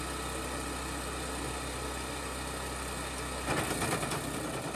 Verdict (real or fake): real